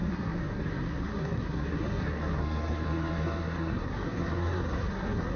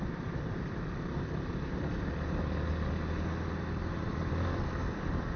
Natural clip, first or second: second